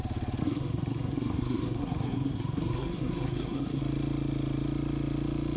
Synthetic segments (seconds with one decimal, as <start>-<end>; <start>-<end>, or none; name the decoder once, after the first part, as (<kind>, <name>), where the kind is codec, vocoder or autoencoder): 0.4-3.8 (codec, SNAC)